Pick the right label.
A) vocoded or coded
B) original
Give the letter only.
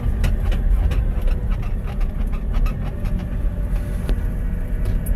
B